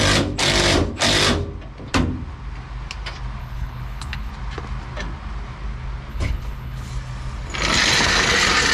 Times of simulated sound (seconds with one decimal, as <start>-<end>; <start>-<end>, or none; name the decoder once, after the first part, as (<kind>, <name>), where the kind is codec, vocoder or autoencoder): 3.4-4.3 (codec, HILCodec); 6.1-6.9